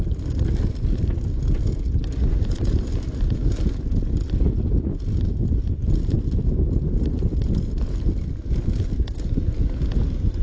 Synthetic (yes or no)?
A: no